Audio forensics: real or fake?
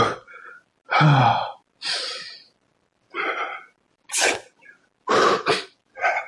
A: real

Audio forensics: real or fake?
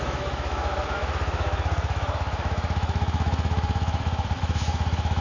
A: fake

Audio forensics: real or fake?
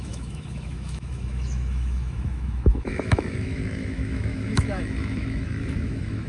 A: fake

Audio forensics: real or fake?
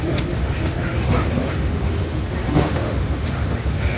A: fake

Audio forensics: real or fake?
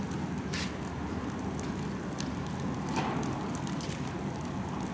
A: real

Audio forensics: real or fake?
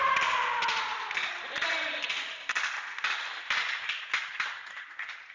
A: real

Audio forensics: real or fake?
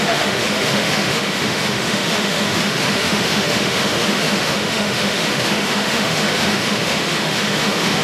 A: fake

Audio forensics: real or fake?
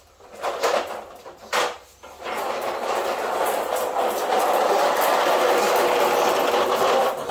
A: real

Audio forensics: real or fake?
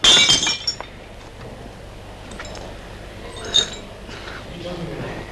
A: real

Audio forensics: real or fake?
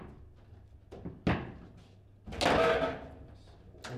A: real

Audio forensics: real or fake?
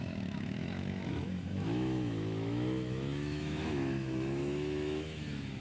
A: fake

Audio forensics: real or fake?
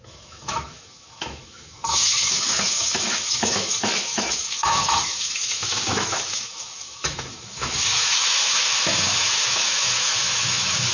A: fake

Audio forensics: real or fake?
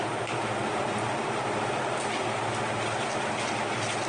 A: real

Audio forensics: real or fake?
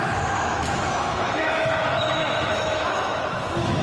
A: fake